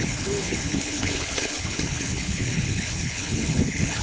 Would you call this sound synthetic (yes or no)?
yes